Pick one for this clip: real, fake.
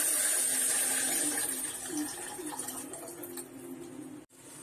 real